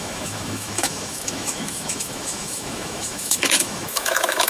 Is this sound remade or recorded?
remade